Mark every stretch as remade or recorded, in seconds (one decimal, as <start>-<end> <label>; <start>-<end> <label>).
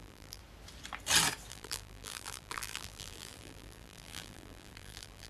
0.0-0.4 remade; 0.4-1.5 recorded; 1.5-5.3 remade